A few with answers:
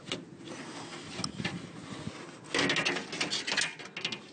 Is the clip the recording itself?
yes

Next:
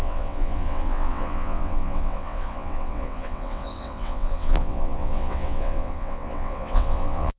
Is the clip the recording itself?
no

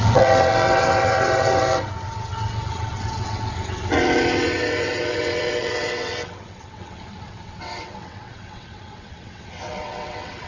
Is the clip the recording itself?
no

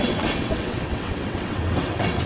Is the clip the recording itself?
no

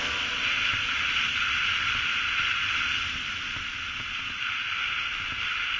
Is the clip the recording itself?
yes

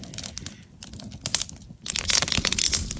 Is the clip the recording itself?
yes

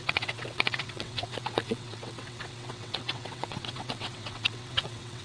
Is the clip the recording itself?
no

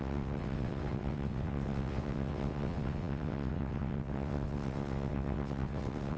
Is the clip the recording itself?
no